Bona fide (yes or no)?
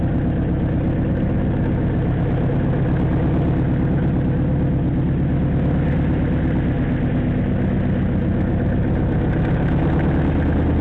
yes